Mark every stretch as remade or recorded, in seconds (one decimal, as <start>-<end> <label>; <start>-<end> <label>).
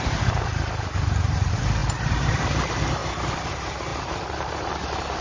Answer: 0.0-3.0 remade; 3.0-3.5 recorded; 3.5-5.2 remade